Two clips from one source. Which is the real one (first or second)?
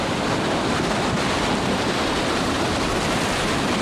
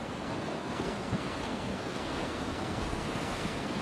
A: first